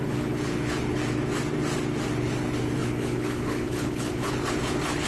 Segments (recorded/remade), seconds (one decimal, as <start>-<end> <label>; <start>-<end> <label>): 0.0-1.0 remade; 1.0-2.1 recorded; 2.1-5.1 remade